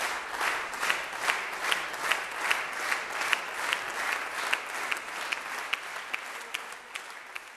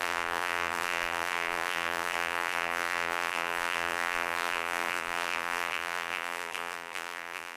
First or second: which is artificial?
second